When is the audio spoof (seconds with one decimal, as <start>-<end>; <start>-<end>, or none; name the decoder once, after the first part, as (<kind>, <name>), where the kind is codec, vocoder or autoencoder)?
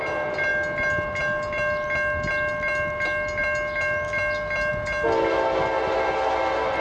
none